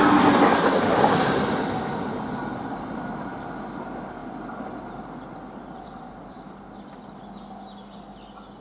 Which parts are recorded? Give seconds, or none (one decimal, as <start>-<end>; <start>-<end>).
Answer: 0.0-0.5; 2.8-4.2; 7.5-8.6